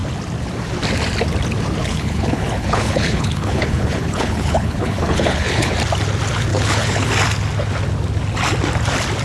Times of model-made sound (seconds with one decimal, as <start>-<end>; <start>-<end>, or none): 1.8-5.7; 6.5-7.1